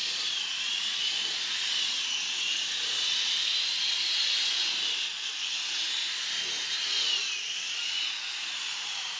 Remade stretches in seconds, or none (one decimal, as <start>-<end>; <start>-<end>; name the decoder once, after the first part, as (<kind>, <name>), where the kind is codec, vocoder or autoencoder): 0.0-4.8 (vocoder, Vocos); 5.6-6.0; 7.4-9.2